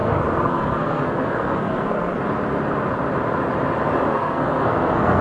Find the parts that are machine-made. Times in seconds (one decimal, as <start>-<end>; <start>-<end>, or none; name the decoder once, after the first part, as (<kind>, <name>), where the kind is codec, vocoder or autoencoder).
0.0-2.2 (codec, SNAC); 4.1-5.2